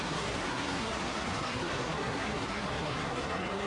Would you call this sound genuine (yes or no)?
no